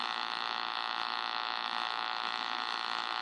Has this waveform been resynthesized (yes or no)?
yes